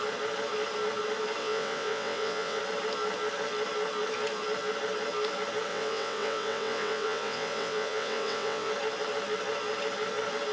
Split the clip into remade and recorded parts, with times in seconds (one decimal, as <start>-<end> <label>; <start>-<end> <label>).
0.0-1.4 recorded; 1.4-2.6 remade; 2.6-5.7 recorded; 5.7-8.7 remade; 8.7-10.5 recorded